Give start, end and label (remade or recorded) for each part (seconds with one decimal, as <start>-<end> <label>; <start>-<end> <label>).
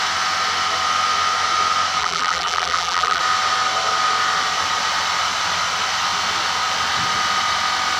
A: 0.0-2.0 recorded; 2.0-3.2 remade; 3.2-8.0 recorded